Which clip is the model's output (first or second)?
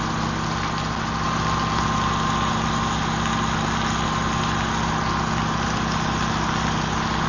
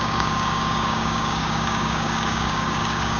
second